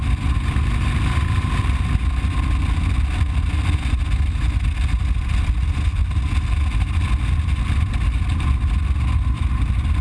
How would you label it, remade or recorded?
recorded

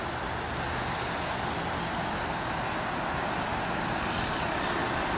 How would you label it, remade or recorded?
recorded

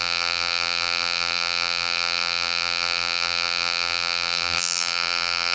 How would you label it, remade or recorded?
remade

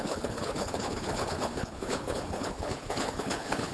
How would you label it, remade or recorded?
remade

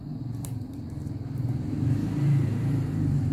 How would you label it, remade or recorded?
remade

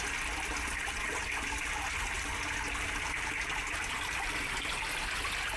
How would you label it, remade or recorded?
recorded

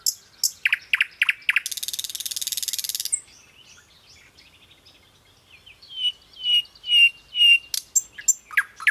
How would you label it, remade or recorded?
recorded